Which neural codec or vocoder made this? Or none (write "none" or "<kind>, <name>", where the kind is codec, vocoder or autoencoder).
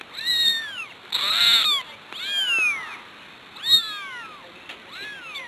none